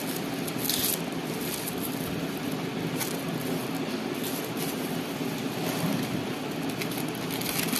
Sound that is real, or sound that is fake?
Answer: real